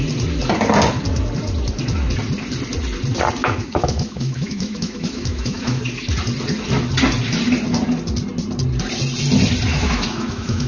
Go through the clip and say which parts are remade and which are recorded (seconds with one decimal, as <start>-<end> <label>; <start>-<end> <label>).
0.0-3.4 recorded; 3.4-5.8 remade; 5.8-9.7 recorded; 9.7-10.7 remade